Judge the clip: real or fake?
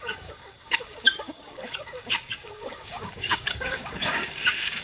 fake